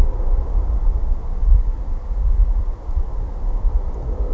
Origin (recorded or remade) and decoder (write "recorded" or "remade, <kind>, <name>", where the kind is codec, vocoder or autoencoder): recorded